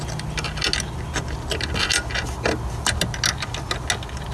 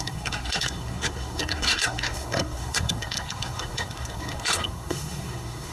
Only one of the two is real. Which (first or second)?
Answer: first